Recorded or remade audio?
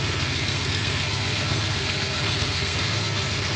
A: remade